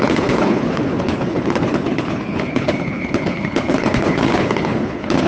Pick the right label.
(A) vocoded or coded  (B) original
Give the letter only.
A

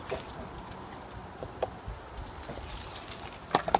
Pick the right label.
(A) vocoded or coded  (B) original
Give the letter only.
B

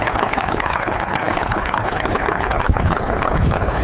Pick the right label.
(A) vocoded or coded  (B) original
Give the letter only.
A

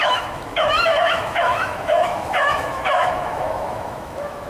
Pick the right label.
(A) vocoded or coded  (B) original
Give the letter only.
A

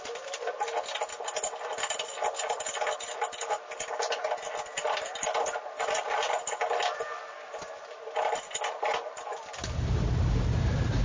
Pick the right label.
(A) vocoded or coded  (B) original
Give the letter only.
B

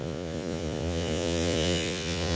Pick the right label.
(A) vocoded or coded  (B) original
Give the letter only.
A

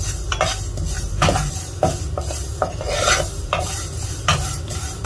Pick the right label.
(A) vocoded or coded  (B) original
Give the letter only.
B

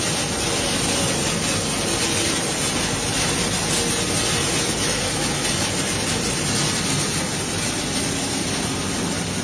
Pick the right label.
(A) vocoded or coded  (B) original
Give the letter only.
B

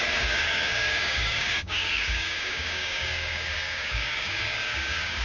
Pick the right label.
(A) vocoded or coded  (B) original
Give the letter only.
A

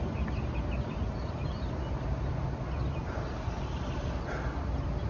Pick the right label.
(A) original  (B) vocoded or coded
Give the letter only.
A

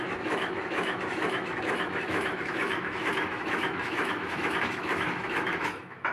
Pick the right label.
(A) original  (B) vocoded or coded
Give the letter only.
B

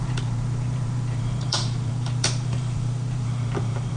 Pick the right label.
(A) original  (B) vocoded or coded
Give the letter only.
B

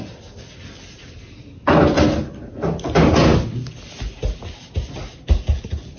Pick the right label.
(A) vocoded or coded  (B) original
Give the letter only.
B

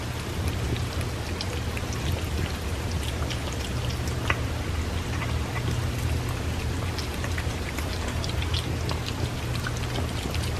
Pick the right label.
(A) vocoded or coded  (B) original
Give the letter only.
B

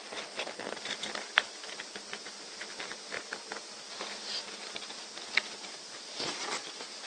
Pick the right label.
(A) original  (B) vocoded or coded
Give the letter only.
A